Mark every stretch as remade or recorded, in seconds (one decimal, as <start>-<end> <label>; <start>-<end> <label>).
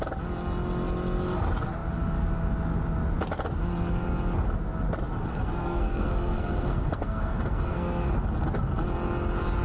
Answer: 0.0-5.3 recorded; 5.3-8.1 remade; 8.1-9.6 recorded